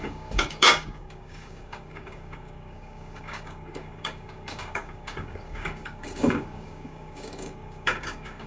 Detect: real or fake fake